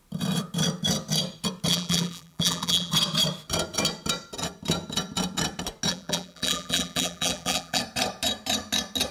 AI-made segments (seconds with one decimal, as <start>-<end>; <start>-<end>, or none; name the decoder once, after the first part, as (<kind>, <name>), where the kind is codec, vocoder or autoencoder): 1.7-2.9 (vocoder, BigVGAN v2); 5.9-7.8